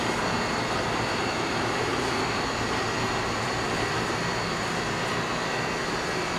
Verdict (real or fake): fake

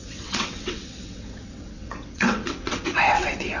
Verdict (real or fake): fake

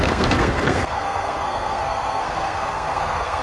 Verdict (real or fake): fake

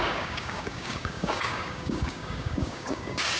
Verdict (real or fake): fake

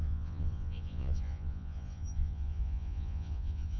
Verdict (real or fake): fake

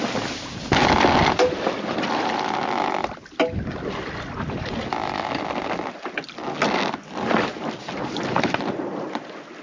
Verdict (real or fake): real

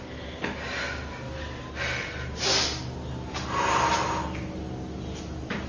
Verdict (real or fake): real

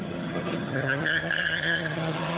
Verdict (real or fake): fake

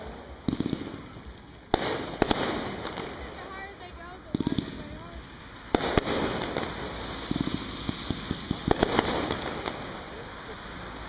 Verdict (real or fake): real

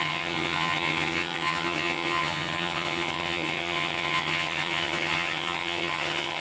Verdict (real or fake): fake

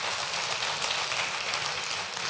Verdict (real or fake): real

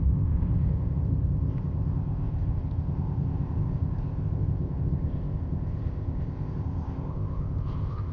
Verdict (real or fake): fake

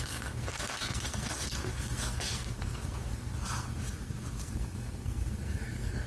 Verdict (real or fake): fake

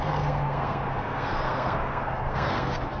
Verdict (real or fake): fake